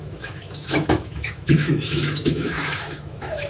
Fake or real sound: fake